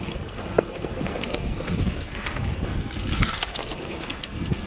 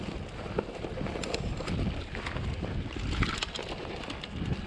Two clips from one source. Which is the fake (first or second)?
first